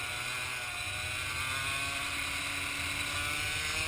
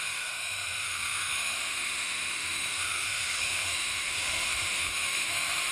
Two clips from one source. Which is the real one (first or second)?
first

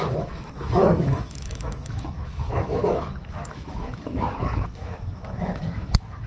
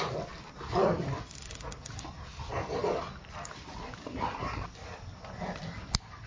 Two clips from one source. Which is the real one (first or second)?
second